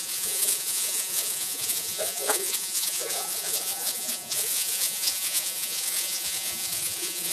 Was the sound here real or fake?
fake